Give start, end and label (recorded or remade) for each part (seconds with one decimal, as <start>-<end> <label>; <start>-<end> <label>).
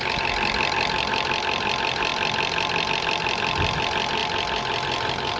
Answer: 0.0-5.4 recorded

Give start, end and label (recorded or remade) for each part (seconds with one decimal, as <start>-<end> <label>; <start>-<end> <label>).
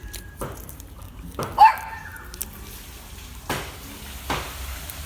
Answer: 0.0-1.5 remade; 1.5-4.5 recorded; 4.5-5.1 remade